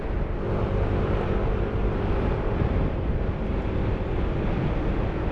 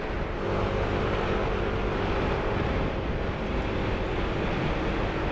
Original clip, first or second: second